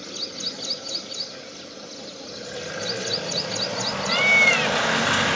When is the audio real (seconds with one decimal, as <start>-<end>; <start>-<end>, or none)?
0.0-5.4